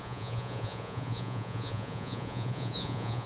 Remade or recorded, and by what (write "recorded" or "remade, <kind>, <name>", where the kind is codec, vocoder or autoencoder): remade, vocoder, Vocos